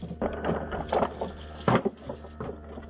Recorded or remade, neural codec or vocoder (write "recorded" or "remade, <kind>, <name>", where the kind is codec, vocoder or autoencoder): recorded